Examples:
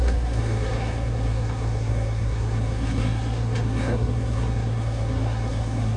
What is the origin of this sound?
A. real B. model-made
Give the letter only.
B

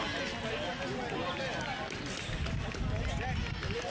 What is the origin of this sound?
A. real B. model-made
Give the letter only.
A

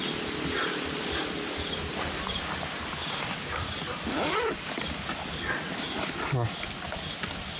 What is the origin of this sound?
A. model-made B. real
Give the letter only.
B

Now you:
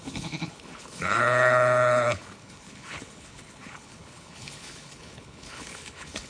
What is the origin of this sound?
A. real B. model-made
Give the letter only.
B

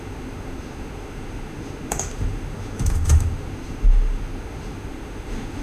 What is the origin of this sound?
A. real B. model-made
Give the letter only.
B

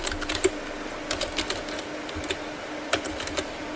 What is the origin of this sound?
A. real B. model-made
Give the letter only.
A